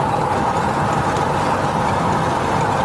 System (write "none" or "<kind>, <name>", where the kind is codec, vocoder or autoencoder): vocoder, BigVGAN v2